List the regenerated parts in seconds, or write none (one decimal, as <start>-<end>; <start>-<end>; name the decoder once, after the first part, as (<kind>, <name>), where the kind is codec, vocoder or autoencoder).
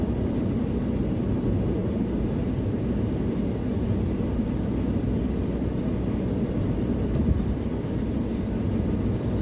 none